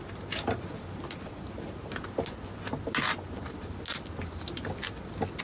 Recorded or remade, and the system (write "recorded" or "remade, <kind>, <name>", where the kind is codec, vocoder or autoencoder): recorded